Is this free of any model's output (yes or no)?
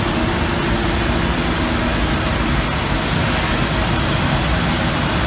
yes